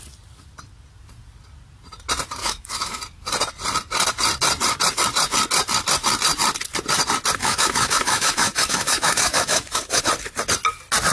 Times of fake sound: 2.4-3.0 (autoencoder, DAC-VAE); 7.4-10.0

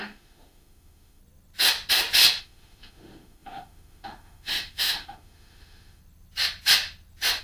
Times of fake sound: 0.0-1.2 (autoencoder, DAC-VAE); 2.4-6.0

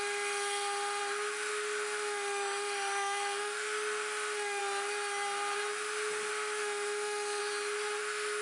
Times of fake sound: 0.0-1.0 (autoencoder, DAC-VAE); 1.5-4.6; 6.3-7.4; 8.0-8.4

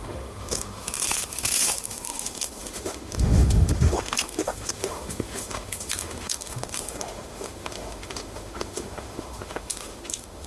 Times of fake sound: 0.0-10.5 (autoencoder, DAC-VAE)